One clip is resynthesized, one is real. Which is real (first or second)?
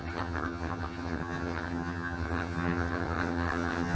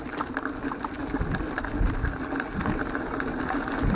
second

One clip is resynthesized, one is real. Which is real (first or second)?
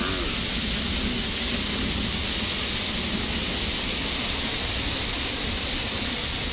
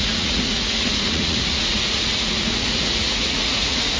first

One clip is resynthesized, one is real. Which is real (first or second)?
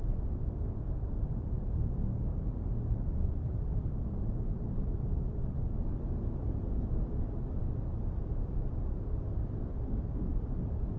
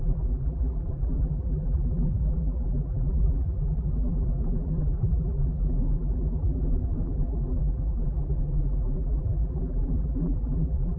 first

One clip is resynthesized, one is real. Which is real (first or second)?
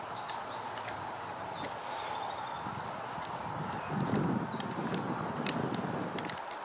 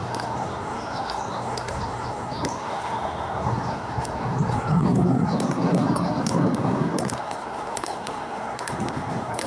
first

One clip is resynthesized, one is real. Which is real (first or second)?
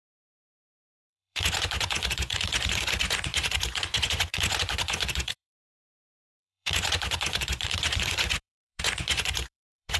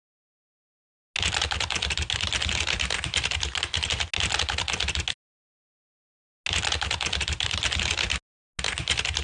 second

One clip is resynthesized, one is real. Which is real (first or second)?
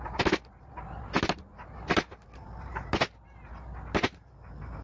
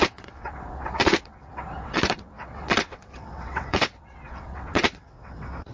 first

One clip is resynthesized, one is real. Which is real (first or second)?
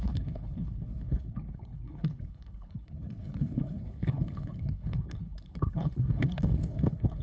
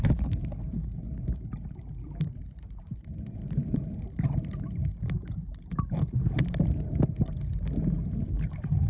second